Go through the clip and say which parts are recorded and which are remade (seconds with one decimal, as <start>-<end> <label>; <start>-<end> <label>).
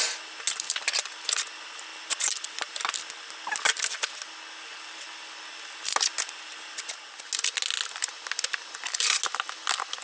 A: 0.0-10.0 recorded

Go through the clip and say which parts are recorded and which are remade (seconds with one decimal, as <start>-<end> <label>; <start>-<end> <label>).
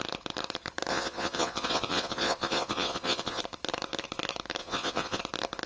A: 0.0-0.9 recorded; 0.9-3.4 remade; 3.4-4.6 recorded; 4.6-5.2 remade; 5.2-5.7 recorded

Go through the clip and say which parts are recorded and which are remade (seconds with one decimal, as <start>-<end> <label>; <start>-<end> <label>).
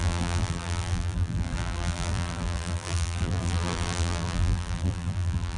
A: 0.0-5.6 remade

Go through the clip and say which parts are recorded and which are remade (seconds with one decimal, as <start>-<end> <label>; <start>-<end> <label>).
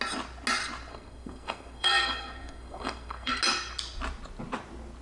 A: 0.0-0.9 recorded; 0.9-3.4 remade; 3.4-5.0 recorded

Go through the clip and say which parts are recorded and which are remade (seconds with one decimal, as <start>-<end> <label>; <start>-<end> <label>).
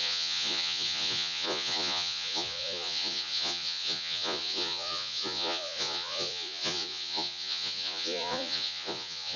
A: 0.0-9.4 remade